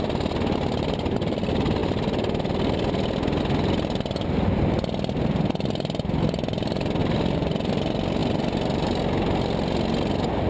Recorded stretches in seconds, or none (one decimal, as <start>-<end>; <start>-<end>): 0.0-10.5